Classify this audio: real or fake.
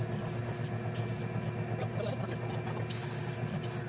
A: real